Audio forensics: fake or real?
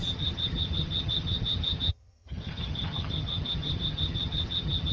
fake